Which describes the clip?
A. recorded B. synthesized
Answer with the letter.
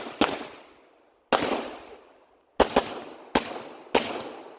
A